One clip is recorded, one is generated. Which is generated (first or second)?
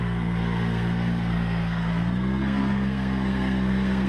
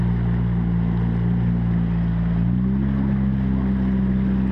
first